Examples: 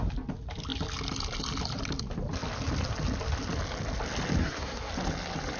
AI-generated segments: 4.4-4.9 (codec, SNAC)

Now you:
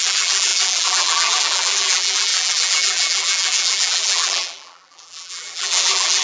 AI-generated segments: 0.0-6.2 (vocoder, BigVGAN v2)

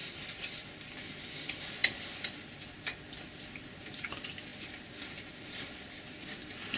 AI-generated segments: 0.0-0.7 (vocoder, BigVGAN v2)

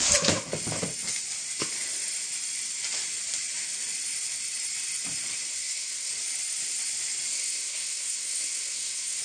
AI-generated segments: 5.5-6.1 (codec, SNAC); 7.3-9.2

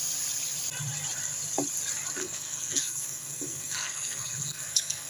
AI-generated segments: 2.2-5.1 (codec, SNAC)

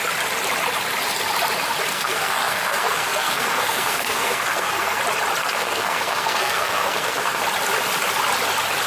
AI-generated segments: 1.9-5.0 (codec, SNAC); 5.4-7.4

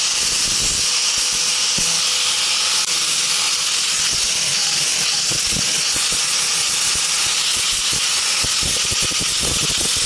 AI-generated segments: none